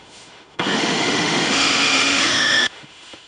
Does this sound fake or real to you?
fake